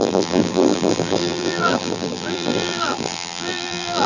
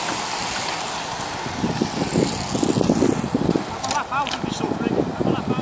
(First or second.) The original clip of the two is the second